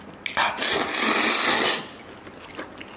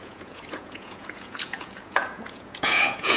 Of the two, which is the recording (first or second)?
first